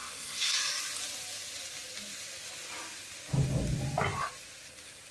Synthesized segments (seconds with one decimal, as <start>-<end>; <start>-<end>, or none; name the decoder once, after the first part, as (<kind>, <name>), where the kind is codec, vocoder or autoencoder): 0.0-0.5 (codec, SNAC)

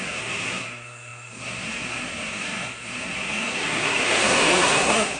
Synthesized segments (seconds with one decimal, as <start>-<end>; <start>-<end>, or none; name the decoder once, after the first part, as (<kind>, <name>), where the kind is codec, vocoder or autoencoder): 0.0-5.2 (codec, SNAC)

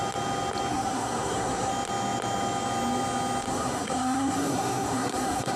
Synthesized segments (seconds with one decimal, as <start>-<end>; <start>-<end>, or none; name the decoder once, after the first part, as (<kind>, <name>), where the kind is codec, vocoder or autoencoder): 0.7-1.7 (codec, SNAC); 3.5-5.6

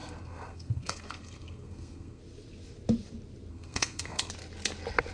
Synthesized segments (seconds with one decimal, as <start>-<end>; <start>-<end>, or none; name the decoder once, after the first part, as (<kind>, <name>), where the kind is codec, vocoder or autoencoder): 0.0-2.2 (codec, SNAC); 3.5-4.3